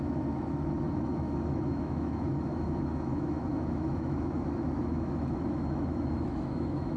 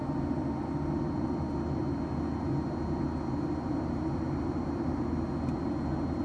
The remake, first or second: first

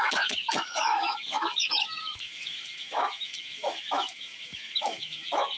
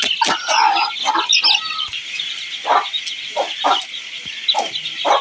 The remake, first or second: first